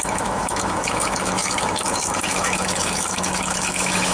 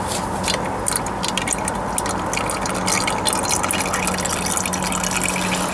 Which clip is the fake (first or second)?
first